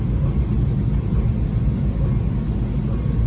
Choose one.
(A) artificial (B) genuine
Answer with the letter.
B